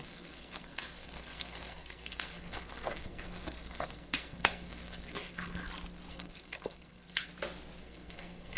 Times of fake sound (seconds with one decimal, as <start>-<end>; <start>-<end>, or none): 0.0-5.6; 6.1-7.3; 7.8-8.6

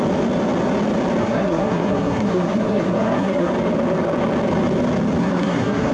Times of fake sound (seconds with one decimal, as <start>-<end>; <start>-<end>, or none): 1.2-3.5; 5.2-5.9

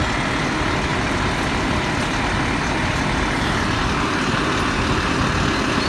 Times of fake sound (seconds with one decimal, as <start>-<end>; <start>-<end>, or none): none

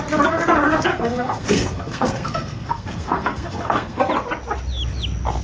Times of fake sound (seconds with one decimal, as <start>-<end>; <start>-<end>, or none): 0.9-4.1

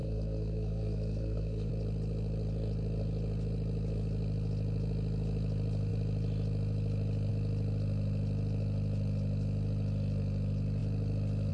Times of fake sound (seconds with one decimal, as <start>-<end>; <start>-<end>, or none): 0.0-1.7

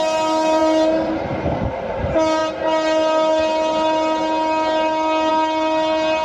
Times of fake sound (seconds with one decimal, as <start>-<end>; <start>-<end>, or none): none